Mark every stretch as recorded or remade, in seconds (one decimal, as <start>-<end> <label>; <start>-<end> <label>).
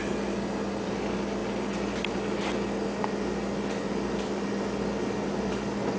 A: 0.0-6.0 recorded